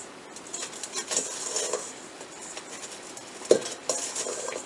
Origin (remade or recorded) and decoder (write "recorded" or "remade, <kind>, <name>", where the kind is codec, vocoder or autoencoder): recorded